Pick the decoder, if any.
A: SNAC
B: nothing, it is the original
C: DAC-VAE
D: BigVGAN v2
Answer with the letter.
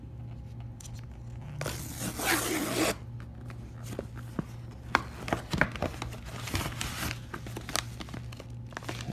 B